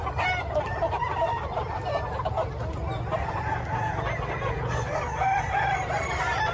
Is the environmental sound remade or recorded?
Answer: recorded